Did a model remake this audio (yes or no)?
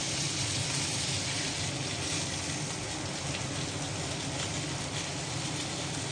no